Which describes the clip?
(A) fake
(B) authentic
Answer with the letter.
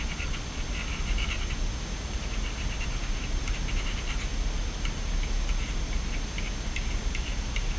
B